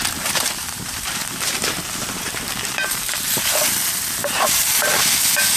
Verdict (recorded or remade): remade